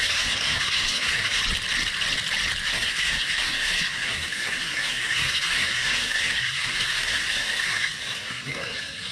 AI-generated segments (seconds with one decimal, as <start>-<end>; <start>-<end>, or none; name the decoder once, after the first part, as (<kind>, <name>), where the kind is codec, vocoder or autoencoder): 0.0-1.4 (codec, SNAC); 2.7-9.1